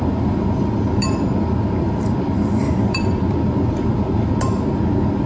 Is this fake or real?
real